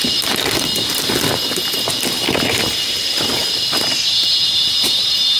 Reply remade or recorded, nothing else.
recorded